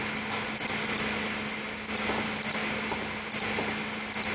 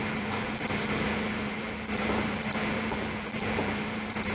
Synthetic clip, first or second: second